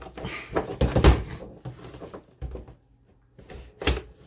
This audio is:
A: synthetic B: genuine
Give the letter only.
B